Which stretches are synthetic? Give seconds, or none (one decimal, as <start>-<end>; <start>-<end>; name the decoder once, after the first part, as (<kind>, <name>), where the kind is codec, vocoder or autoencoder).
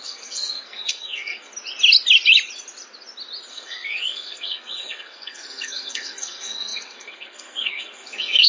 0.0-1.5 (codec, SNAC); 3.5-8.5